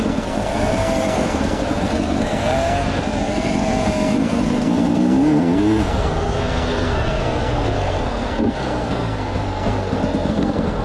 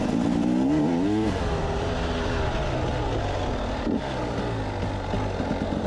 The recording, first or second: second